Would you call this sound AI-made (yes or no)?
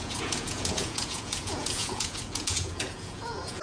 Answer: yes